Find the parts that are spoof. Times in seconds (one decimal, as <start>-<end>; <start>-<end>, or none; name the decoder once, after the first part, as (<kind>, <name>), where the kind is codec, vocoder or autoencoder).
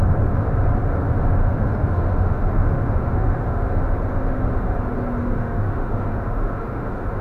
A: 1.4-3.7 (autoencoder, DAC-VAE); 5.2-7.2